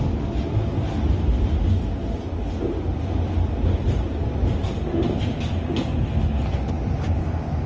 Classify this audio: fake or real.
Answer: real